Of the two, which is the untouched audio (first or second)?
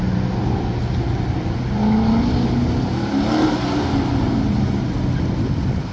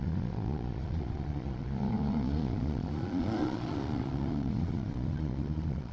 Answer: first